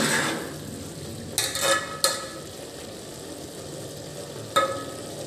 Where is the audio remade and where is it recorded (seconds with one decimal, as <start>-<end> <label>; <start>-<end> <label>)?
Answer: 0.0-5.3 recorded